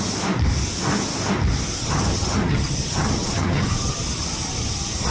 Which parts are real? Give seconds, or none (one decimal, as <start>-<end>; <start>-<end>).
0.0-1.8